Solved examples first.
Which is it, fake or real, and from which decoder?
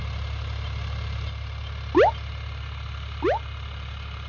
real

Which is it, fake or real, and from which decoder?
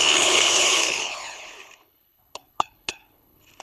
fake, codec, HILCodec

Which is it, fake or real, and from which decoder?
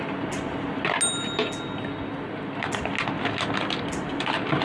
real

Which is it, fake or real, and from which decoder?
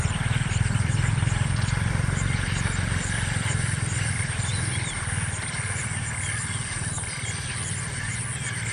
real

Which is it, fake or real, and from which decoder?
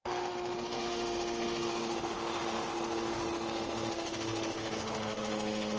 fake, autoencoder, DAC-VAE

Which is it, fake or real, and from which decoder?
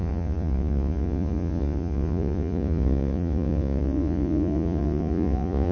fake, vocoder, Vocos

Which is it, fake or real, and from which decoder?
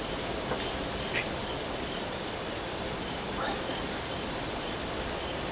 real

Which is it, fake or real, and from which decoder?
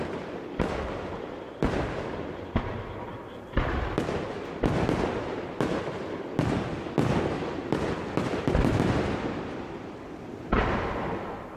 real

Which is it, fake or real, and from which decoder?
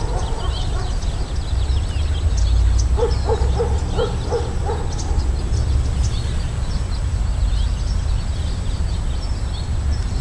real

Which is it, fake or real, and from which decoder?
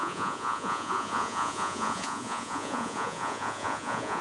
fake, vocoder, Vocos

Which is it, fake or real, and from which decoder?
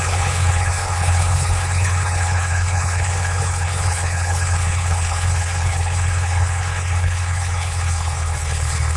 fake, codec, HILCodec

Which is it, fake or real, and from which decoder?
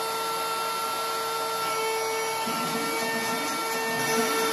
real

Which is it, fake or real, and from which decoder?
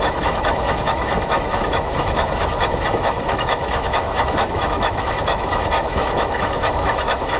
fake, autoencoder, DAC-VAE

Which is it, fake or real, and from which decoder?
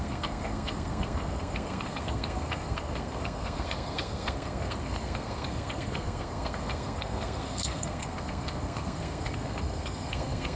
fake, codec, SNAC